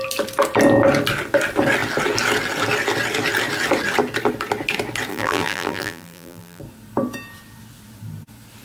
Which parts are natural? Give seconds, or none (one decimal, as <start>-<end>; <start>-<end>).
0.0-5.1; 6.6-8.6